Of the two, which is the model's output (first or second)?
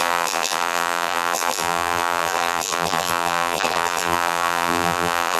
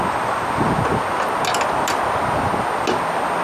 first